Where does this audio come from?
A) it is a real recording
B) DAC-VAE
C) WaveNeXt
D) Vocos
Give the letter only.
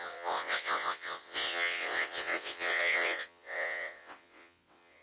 C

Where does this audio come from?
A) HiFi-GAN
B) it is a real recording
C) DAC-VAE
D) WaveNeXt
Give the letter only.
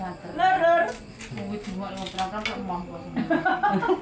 B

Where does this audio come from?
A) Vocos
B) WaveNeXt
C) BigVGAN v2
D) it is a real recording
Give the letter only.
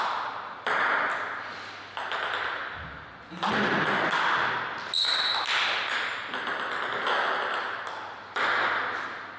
D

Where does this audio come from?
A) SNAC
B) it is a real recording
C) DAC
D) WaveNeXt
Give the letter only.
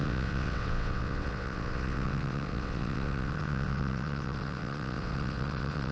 D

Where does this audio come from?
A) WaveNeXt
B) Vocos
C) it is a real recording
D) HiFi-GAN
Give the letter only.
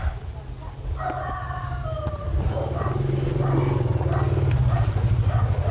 C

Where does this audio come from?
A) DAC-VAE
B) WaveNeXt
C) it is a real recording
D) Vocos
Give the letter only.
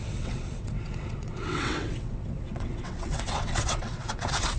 B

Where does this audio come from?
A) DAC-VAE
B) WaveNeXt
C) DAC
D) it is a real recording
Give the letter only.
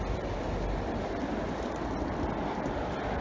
D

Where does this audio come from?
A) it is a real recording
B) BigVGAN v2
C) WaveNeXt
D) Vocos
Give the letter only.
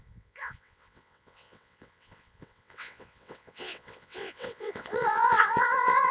C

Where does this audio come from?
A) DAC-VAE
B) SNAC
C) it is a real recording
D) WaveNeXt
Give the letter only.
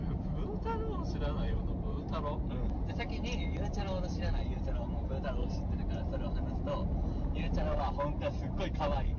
C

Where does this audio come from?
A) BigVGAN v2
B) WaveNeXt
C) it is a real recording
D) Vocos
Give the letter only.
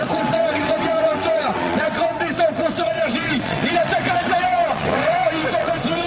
B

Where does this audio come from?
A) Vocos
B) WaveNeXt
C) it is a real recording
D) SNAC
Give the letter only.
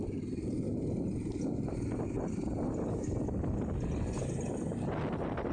C